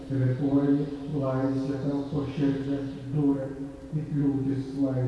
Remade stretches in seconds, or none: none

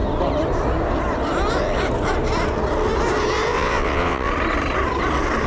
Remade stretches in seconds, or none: 3.5-4.3 (vocoder, WaveNeXt)

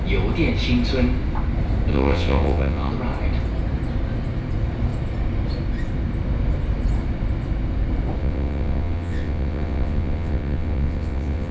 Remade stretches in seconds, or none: 1.9-2.9 (vocoder, WaveNeXt); 8.2-11.5

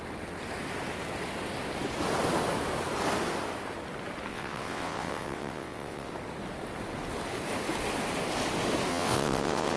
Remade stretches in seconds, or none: 4.3-6.1 (vocoder, WaveNeXt); 8.9-9.8

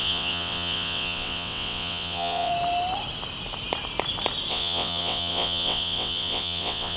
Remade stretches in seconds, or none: 0.0-2.5 (vocoder, WaveNeXt); 4.5-7.0

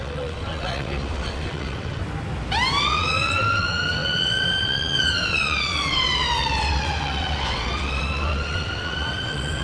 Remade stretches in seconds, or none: 0.0-2.0 (vocoder, WaveNeXt); 2.8-9.6